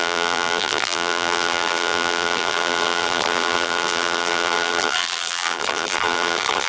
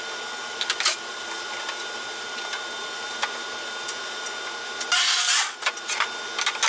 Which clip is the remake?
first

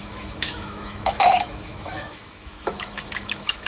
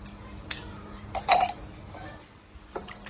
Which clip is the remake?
first